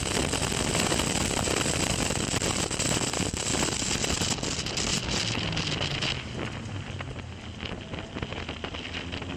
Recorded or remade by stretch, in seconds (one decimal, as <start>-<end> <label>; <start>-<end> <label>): 0.0-4.9 recorded; 4.9-5.6 remade; 5.6-8.3 recorded; 8.3-9.4 remade